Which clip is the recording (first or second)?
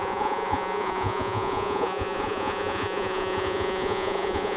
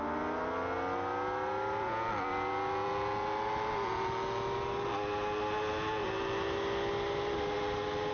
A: second